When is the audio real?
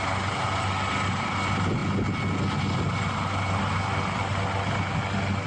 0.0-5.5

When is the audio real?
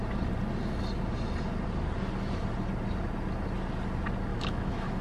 0.0-4.3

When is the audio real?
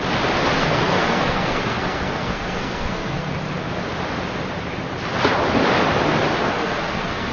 0.0-0.6; 3.3-6.4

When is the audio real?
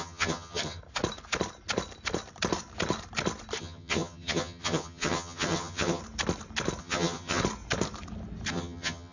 0.8-3.6; 6.0-6.8; 7.4-8.5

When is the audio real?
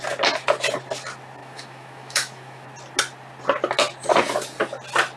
0.0-1.4; 2.7-5.2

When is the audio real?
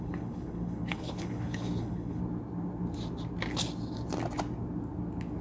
2.2-5.4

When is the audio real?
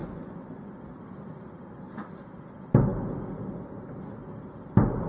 0.6-5.1